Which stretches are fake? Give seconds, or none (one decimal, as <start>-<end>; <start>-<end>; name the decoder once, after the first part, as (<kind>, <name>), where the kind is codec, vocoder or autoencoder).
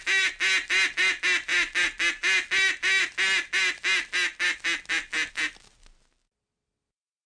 none